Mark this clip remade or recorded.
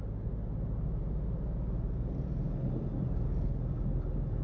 recorded